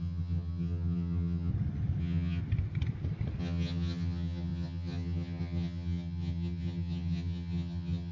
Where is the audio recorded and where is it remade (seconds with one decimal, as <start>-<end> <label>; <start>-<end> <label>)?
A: 0.0-1.5 remade; 1.5-2.0 recorded; 2.0-2.4 remade; 2.4-3.4 recorded; 3.4-8.1 remade